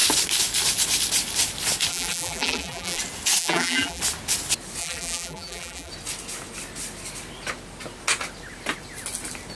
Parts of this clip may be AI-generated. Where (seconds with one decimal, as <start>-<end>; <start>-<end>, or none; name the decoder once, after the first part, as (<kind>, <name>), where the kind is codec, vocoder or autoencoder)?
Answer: 1.9-3.0 (vocoder, BigVGAN v2); 3.4-4.0; 4.8-5.9